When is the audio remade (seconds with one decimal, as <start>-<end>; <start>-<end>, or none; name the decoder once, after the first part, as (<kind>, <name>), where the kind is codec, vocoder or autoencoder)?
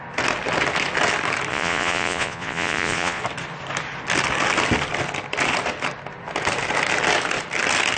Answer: 1.5-3.2 (vocoder, Vocos)